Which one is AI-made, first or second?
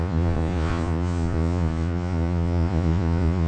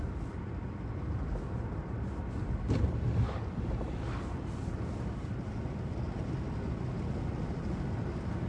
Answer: first